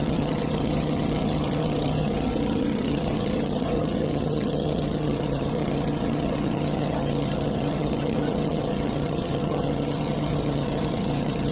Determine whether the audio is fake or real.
fake